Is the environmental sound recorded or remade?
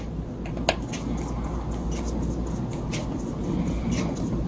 recorded